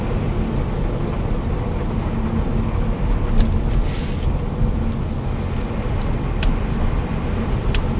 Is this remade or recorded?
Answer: recorded